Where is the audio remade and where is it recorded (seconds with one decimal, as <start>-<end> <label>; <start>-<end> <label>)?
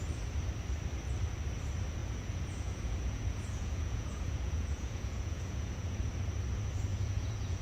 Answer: 0.0-2.0 recorded; 2.0-6.1 remade; 6.1-6.9 recorded; 6.9-7.6 remade